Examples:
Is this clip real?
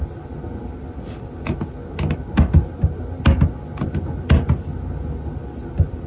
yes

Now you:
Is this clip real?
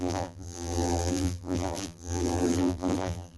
no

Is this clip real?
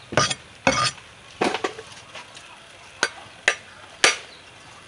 yes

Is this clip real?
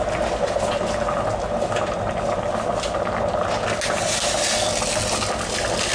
yes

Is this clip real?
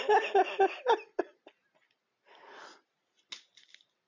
yes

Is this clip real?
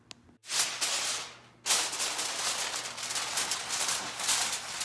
yes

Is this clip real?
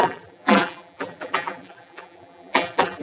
no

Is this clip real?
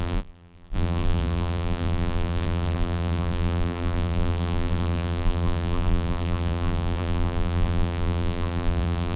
no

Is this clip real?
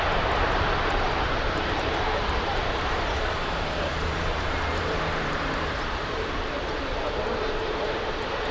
no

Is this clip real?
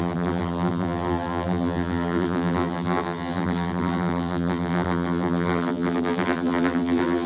no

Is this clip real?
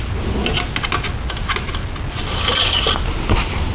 yes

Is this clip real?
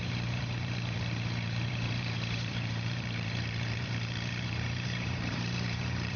no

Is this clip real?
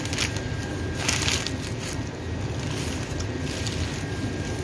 yes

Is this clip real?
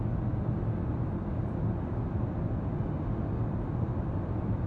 yes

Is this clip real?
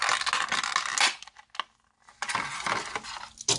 yes